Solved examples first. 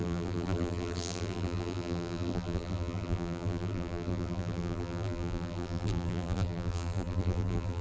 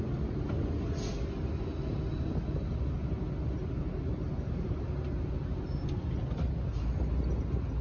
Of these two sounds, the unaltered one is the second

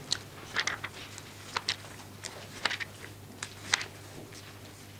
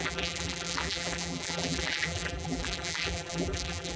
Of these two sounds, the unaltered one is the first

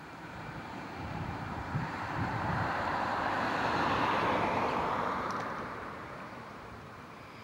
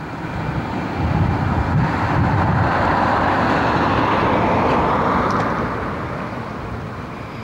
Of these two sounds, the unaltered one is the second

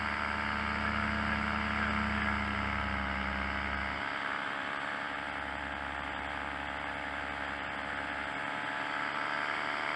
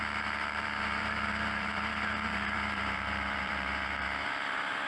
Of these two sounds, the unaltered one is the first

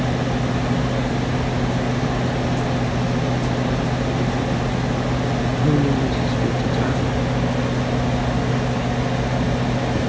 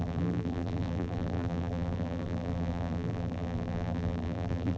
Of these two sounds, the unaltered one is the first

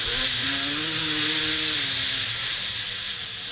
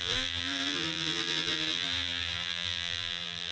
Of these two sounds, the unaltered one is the first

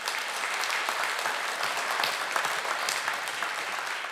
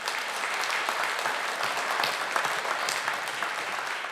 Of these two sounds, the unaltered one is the second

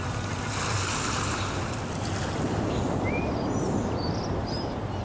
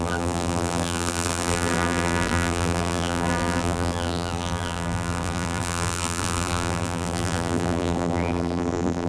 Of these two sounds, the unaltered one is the first